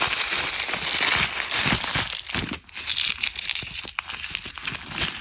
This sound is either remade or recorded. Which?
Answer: recorded